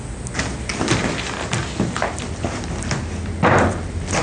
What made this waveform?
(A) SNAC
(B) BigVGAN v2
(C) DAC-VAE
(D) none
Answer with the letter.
D